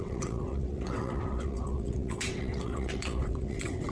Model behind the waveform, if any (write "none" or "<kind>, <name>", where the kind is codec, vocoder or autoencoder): vocoder, WaveNeXt